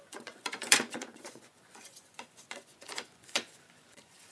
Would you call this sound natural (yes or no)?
no